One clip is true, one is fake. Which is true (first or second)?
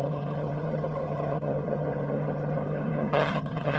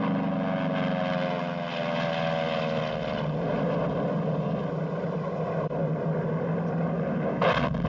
second